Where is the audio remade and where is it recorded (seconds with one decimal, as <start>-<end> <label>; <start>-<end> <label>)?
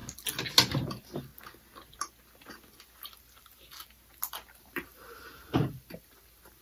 0.0-0.7 recorded; 0.7-1.3 remade; 1.3-4.6 recorded; 4.6-6.6 remade